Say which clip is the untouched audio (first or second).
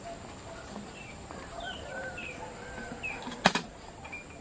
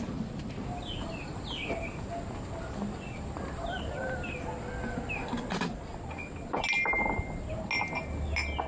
second